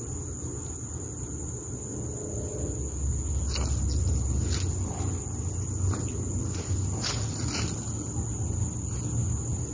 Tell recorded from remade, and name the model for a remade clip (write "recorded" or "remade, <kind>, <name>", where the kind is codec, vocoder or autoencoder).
recorded